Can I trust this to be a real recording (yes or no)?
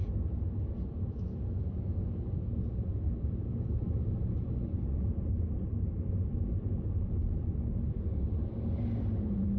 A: yes